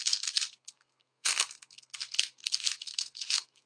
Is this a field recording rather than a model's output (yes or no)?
no